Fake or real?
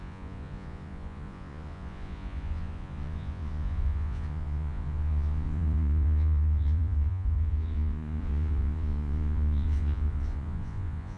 fake